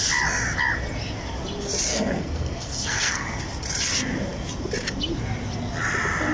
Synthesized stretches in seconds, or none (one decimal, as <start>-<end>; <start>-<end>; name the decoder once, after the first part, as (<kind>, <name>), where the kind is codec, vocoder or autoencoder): 1.9-3.4 (codec, SNAC)